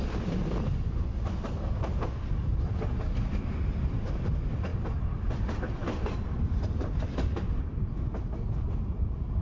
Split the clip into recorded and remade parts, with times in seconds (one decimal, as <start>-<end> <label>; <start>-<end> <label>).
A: 0.0-9.4 recorded